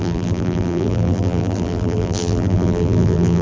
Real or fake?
fake